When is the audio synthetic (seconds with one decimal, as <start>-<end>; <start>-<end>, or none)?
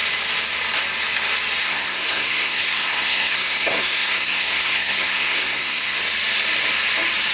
1.6-6.0